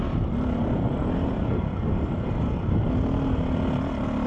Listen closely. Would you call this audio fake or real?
real